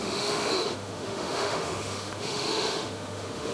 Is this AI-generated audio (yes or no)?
yes